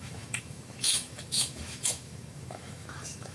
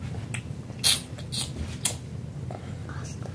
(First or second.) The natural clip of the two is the second